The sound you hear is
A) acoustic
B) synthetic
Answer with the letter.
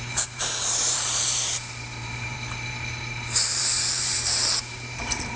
B